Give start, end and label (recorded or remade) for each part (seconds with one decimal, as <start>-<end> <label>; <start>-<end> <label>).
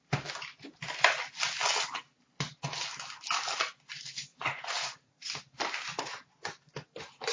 0.0-4.3 recorded; 4.3-5.4 remade; 5.4-7.3 recorded